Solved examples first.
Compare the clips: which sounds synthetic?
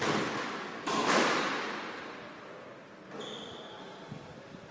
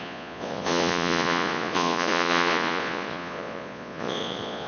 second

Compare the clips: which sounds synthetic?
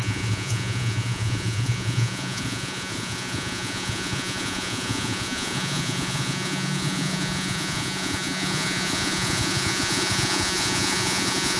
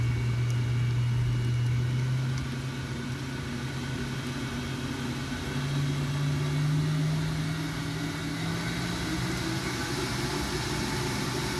first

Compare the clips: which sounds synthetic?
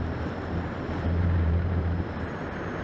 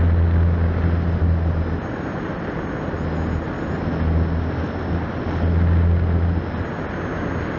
first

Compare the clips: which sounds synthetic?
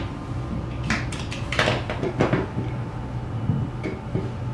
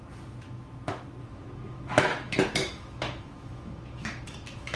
second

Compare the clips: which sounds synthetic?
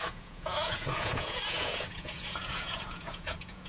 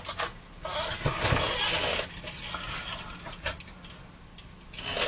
first